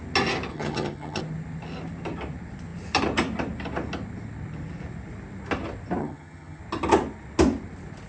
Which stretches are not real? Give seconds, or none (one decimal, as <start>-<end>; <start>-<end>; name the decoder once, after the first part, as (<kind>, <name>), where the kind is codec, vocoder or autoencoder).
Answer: 0.5-1.2 (vocoder, HiFi-GAN); 6.0-6.6